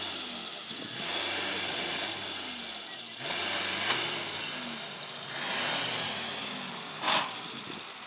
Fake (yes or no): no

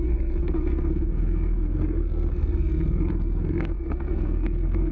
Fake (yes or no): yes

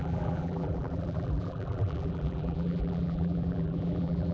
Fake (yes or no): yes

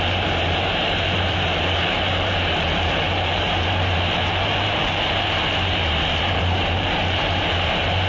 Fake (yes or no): yes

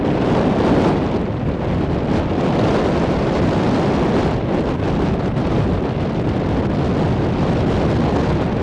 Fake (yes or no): no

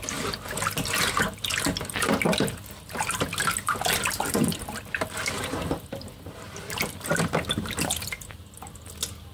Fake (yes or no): no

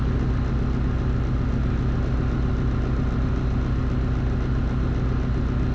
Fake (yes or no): no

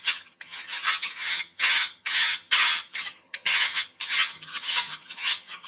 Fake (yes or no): yes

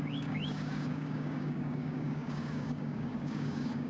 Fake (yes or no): yes